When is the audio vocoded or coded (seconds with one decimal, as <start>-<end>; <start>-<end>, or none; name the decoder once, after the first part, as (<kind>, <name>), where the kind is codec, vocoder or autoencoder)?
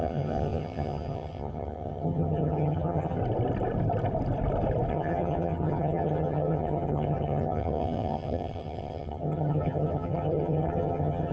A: 0.0-3.2 (vocoder, HiFi-GAN); 4.9-11.3